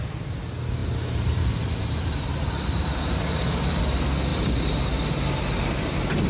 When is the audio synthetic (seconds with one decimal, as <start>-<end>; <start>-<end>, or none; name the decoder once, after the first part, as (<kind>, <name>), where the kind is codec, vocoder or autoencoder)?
0.8-3.8 (vocoder, BigVGAN v2); 4.3-5.4